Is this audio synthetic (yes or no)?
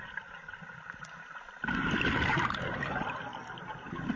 yes